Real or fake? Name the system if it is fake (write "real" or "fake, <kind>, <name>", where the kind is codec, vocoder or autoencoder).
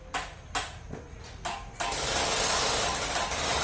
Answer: real